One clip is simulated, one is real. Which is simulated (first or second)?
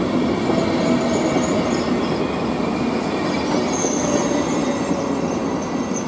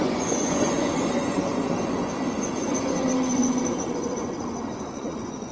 second